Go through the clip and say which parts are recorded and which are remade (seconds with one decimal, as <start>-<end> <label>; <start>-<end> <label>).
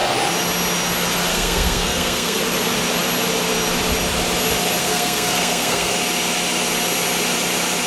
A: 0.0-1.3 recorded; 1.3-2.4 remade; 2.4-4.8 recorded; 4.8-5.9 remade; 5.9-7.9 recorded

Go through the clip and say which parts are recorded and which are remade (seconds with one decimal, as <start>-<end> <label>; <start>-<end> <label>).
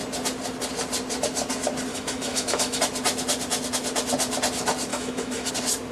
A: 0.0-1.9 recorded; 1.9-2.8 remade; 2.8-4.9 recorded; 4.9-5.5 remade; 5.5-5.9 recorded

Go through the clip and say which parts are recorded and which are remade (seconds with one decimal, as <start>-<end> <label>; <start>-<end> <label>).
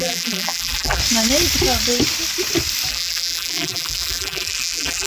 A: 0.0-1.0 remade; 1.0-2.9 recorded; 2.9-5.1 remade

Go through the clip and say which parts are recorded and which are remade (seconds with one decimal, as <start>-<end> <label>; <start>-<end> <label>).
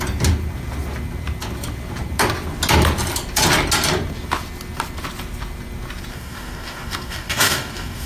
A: 0.0-6.1 recorded; 6.1-8.1 remade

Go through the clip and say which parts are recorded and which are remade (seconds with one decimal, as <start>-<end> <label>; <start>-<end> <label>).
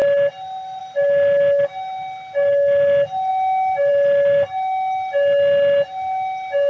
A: 0.0-6.7 recorded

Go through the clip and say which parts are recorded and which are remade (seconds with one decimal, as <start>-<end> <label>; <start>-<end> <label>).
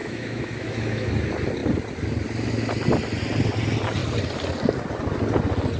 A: 0.0-1.1 remade; 1.1-5.8 recorded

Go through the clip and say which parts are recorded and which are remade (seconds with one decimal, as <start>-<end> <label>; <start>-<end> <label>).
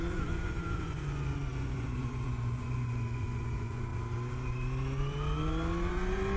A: 0.0-3.9 remade; 3.9-6.4 recorded